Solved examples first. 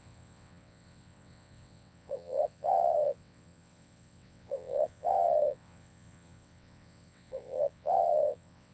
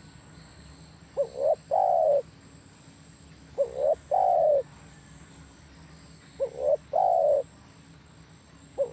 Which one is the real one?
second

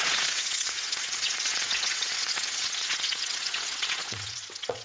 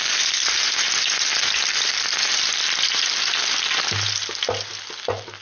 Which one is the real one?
second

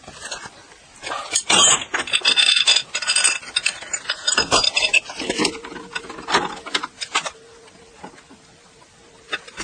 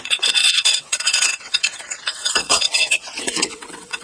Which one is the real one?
first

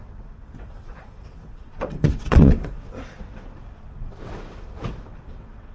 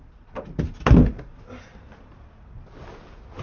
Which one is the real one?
second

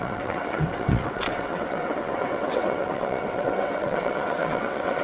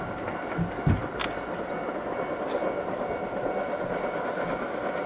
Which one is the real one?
second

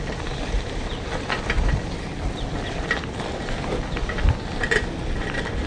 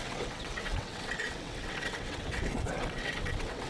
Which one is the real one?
first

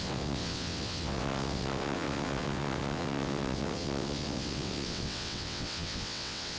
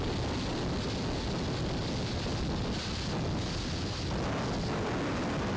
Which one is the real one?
second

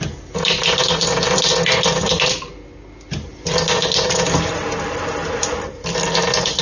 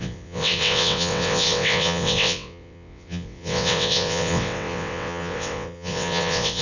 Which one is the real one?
first